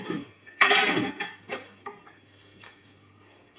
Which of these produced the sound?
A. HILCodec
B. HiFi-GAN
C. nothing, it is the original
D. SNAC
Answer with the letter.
D